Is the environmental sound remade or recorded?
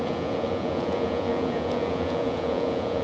remade